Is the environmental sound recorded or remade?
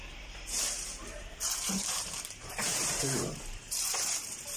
remade